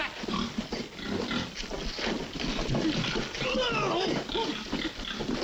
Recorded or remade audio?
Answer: recorded